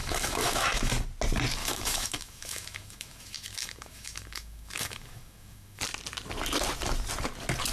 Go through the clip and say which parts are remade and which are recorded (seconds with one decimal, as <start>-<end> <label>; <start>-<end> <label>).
0.0-0.9 remade; 0.9-1.6 recorded; 1.6-5.8 remade; 5.8-7.7 recorded